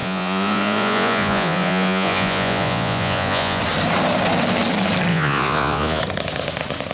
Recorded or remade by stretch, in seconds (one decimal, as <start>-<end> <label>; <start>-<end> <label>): 0.0-3.6 remade; 3.6-5.1 recorded; 5.1-6.0 remade; 6.0-6.9 recorded